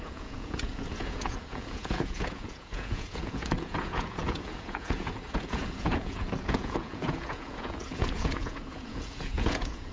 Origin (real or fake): fake